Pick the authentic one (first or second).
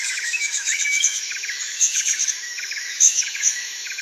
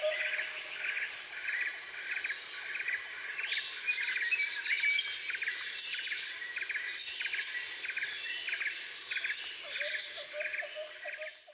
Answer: second